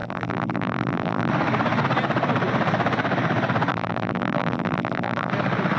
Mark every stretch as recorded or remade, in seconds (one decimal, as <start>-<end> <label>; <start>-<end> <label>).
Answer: 0.0-1.3 remade; 1.3-3.7 recorded; 3.7-5.3 remade; 5.3-5.8 recorded